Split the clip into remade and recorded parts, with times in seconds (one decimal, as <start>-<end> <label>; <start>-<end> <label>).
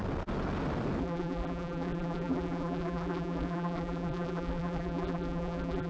0.0-1.0 recorded; 1.0-5.9 remade